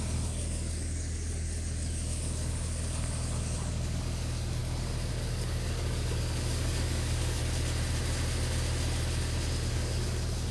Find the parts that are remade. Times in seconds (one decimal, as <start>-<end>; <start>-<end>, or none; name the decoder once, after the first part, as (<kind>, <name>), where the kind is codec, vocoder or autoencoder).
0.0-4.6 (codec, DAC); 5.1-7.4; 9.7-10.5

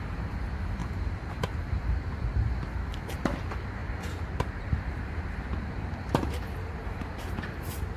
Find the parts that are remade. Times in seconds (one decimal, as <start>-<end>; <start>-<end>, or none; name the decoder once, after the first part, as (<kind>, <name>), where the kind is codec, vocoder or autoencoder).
0.0-8.0 (vocoder, BigVGAN v2)

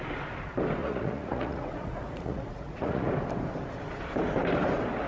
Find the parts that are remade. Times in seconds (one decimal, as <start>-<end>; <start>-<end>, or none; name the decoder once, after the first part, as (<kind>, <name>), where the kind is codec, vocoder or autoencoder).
0.8-3.1 (vocoder, Vocos)